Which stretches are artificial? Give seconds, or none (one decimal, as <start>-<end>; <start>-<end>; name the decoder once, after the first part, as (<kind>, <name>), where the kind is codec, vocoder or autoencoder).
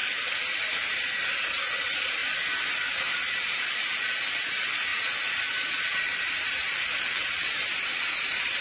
0.7-2.2 (vocoder, BigVGAN v2); 4.1-4.9; 5.7-8.6